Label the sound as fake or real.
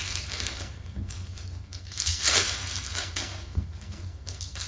fake